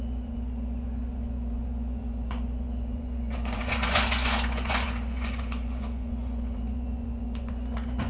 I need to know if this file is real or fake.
fake